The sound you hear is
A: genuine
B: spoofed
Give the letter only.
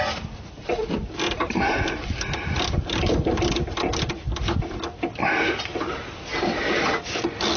A